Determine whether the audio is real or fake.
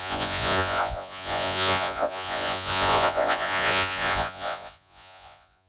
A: fake